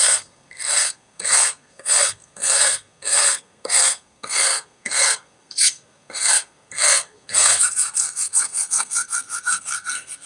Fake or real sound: fake